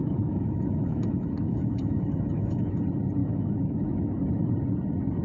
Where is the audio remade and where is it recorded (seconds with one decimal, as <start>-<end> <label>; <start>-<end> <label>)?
0.0-2.8 remade; 2.8-3.2 recorded; 3.2-4.2 remade; 4.2-5.2 recorded